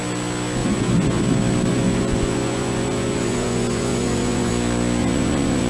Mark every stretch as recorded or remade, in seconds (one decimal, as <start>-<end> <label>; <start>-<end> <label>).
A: 0.0-0.6 recorded; 0.6-1.2 remade; 1.2-1.7 recorded; 1.7-4.5 remade; 4.5-5.0 recorded; 5.0-5.7 remade